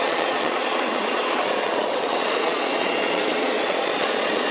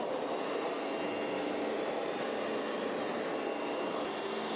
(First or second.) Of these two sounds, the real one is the second